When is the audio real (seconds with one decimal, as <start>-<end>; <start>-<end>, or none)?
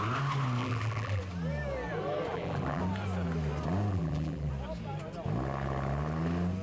0.0-0.6; 1.2-2.3; 2.8-3.9; 4.5-6.6